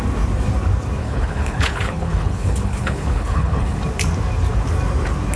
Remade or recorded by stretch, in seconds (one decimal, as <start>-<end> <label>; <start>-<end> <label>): 0.0-1.0 recorded; 1.0-3.8 remade; 3.8-5.4 recorded